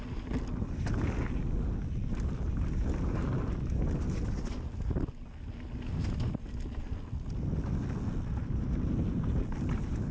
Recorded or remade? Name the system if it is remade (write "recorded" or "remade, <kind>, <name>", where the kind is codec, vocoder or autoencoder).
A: recorded